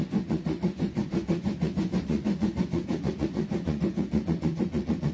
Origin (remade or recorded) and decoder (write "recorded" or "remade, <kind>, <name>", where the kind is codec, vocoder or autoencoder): remade, vocoder, Vocos